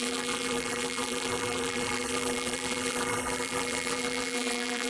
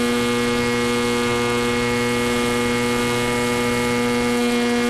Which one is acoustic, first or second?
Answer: second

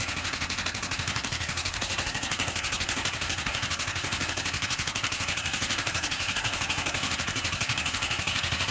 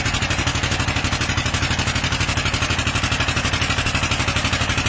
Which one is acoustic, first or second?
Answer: second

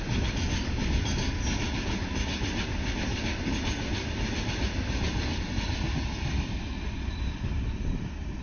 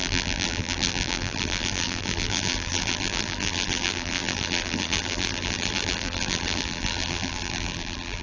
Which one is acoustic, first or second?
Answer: first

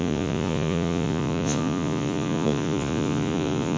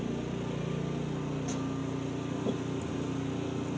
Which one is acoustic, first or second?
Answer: second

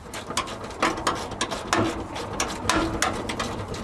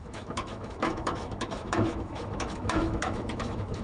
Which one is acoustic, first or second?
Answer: first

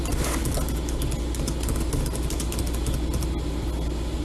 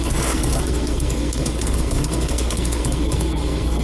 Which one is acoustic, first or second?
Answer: first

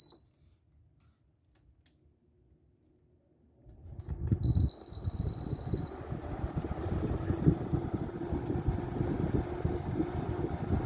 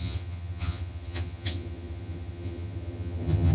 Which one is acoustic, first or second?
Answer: first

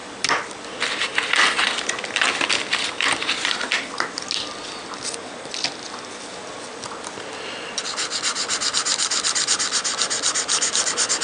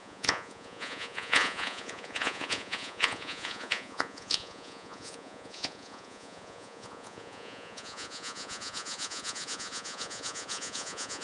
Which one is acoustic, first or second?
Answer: first